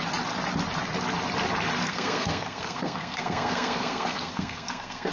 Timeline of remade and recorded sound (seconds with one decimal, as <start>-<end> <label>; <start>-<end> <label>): 0.0-1.8 recorded; 1.8-5.1 remade